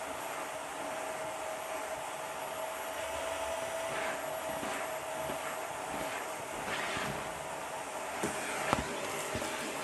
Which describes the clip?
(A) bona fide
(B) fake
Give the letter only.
A